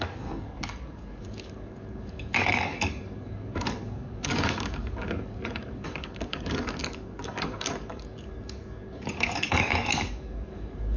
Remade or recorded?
remade